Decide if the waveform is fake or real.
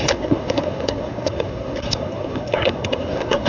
fake